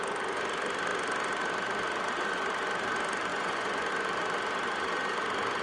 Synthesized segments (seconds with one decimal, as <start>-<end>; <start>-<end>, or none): 3.3-3.9